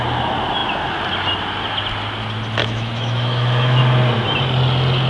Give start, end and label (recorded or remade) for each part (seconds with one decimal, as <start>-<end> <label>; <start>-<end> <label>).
0.0-2.6 recorded; 2.6-3.8 remade; 3.8-5.1 recorded